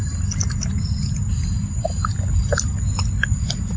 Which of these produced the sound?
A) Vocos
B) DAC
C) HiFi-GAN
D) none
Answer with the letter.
D